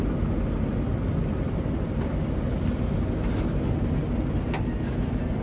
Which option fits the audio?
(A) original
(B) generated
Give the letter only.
A